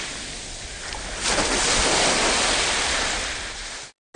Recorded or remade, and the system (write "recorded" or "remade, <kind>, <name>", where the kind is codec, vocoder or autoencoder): recorded